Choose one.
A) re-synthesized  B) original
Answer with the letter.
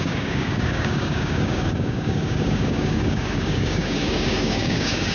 A